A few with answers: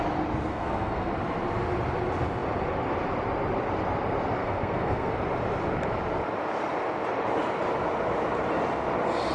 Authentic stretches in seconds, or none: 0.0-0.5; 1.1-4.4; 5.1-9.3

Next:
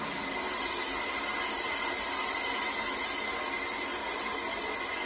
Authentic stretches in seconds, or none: 0.0-5.1

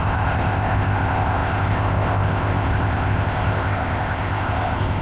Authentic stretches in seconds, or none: none